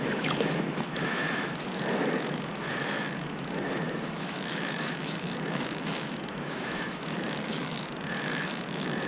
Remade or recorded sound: remade